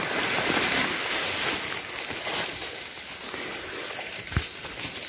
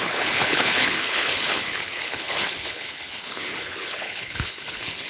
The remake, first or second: second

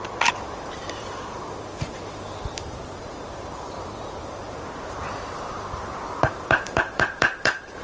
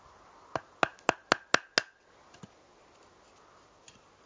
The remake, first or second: first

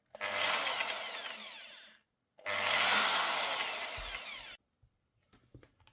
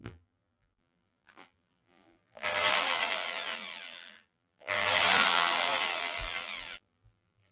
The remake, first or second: second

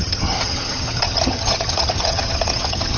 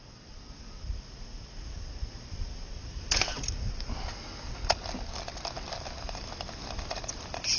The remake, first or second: first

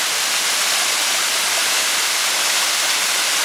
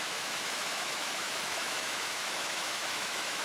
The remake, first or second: second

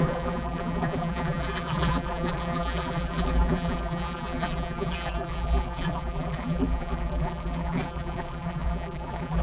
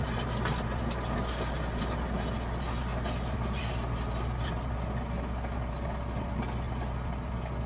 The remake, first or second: first